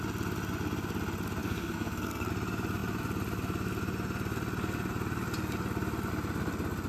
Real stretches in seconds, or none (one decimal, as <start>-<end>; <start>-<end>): 0.0-1.4; 2.3-6.9